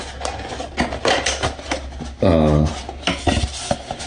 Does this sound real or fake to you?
real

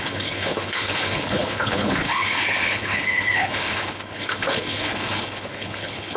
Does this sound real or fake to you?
fake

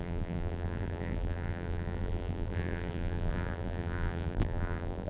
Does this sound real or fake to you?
fake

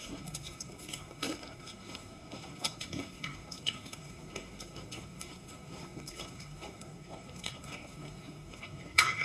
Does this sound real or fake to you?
fake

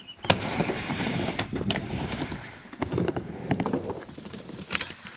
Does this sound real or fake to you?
fake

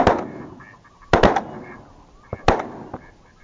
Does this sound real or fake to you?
real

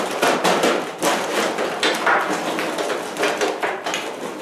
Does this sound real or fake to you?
real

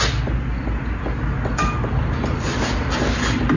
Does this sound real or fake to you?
real